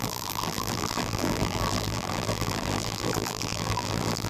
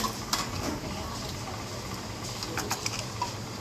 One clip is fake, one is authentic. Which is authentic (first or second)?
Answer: second